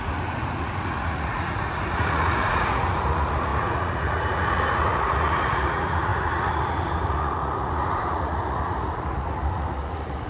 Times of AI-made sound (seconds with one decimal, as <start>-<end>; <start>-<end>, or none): 0.0-10.3